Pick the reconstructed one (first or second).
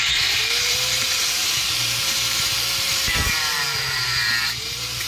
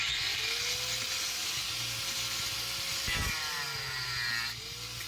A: first